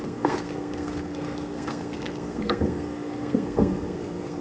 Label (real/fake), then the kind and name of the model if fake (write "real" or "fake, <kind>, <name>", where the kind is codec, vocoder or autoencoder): fake, codec, SNAC